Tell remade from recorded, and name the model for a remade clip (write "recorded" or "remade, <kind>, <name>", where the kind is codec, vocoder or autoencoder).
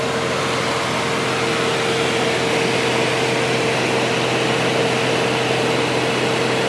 recorded